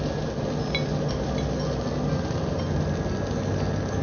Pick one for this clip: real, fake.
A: real